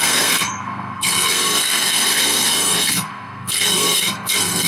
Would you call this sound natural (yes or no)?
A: no